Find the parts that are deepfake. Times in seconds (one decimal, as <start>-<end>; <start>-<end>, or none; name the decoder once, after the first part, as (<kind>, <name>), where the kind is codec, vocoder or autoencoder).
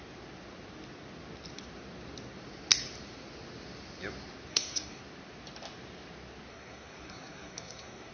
4.5-5.0 (codec, SNAC); 6.5-8.1